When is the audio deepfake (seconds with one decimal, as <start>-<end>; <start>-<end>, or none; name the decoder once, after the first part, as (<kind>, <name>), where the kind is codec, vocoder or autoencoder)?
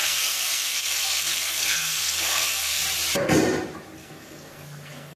0.0-2.8 (codec, SNAC); 4.0-5.2